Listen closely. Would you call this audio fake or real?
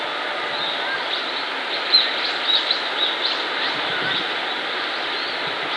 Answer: real